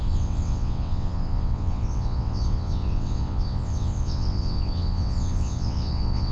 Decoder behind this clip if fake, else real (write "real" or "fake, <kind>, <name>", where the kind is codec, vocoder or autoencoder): fake, vocoder, WaveNeXt